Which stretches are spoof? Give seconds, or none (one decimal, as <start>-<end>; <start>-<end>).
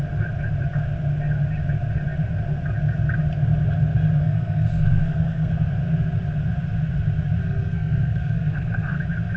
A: 4.2-5.5; 7.4-9.0